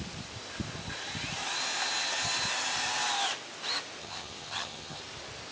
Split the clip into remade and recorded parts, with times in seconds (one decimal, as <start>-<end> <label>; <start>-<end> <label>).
0.0-4.0 recorded; 4.0-5.0 remade; 5.0-5.5 recorded